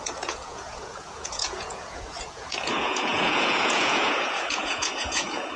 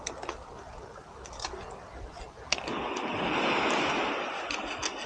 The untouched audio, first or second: second